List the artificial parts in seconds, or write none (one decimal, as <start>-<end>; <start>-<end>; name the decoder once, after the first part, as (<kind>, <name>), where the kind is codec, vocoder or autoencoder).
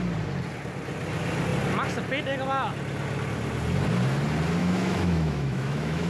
4.6-6.1 (autoencoder, DAC-VAE)